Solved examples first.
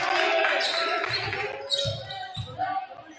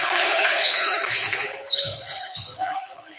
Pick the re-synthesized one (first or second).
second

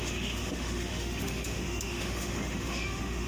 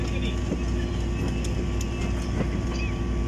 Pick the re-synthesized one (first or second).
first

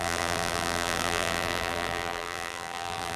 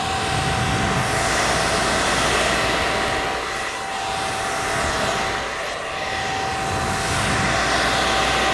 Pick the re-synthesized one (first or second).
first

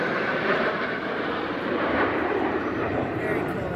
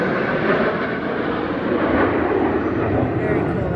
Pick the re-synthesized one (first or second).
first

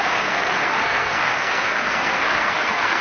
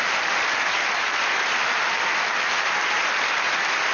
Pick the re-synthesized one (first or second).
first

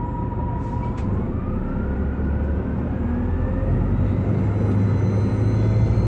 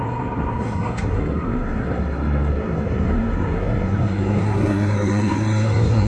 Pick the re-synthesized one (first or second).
second